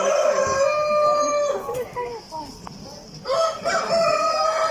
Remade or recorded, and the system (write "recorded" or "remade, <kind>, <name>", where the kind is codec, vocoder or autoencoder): recorded